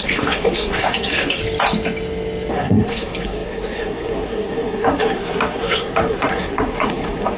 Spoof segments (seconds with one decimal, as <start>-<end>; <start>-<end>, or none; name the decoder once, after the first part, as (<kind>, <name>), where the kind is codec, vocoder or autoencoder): 0.0-1.4 (codec, SNAC); 2.5-7.4